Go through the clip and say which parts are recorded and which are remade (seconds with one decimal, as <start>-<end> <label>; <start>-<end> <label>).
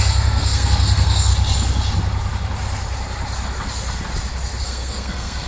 0.0-1.3 remade; 1.3-4.6 recorded; 4.6-5.5 remade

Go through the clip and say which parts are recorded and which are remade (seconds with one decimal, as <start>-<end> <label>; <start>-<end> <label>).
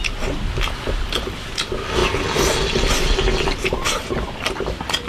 0.0-5.1 recorded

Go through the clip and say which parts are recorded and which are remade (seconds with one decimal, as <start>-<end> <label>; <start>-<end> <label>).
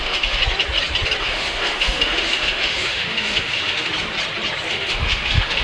0.0-0.4 remade; 0.4-1.2 recorded; 1.2-3.9 remade; 3.9-4.7 recorded; 4.7-5.6 remade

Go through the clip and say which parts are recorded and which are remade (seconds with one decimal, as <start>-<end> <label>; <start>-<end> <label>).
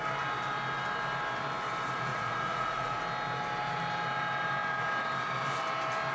0.0-2.1 recorded; 2.1-3.0 remade; 3.0-6.1 recorded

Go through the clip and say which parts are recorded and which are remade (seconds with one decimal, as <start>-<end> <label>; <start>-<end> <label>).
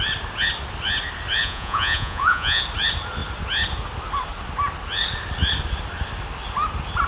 0.0-1.4 recorded; 1.4-2.6 remade; 2.6-7.1 recorded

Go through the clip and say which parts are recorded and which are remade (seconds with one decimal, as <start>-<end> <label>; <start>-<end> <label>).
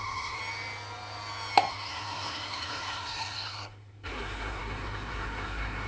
0.0-0.4 remade; 0.4-1.7 recorded; 1.7-5.9 remade